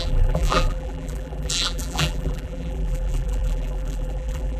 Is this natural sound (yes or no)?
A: no